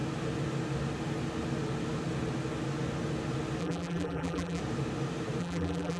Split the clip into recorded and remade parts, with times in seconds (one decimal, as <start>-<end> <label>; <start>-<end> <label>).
0.0-3.6 recorded; 3.6-4.6 remade; 4.6-5.4 recorded; 5.4-6.0 remade